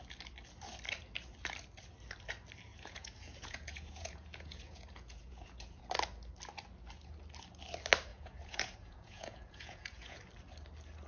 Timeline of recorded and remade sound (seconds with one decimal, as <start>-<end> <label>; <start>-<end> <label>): 0.0-2.7 recorded; 2.7-5.8 remade; 5.8-8.1 recorded; 8.1-10.2 remade; 10.2-11.1 recorded